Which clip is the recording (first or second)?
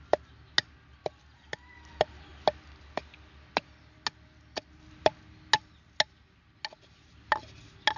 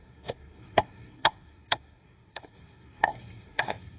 first